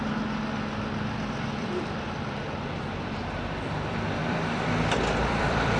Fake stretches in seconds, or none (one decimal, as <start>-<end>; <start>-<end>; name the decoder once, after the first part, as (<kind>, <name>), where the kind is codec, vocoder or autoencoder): 1.6-3.2 (vocoder, BigVGAN v2); 4.2-5.8